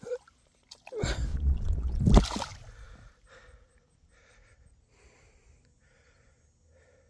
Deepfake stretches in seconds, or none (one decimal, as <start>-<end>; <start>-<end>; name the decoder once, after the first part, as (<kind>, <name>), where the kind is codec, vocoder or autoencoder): 1.3-2.0 (vocoder, Vocos)